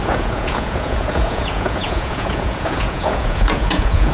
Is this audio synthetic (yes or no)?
yes